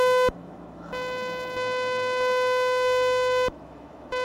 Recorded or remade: remade